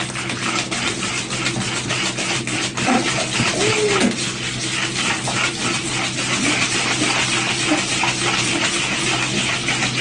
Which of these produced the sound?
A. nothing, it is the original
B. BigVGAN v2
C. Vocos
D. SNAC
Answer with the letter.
A